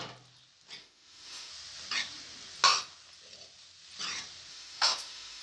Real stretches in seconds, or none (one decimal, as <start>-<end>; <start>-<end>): 0.0-0.8; 1.5-4.5